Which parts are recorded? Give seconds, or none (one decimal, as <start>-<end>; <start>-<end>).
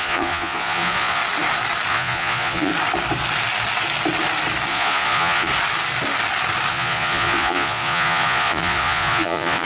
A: 1.2-1.9; 2.7-4.7; 5.5-6.7